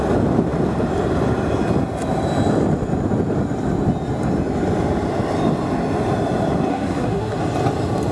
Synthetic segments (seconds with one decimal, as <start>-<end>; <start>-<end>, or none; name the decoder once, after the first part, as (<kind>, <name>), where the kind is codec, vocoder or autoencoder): 6.7-7.4 (codec, SNAC)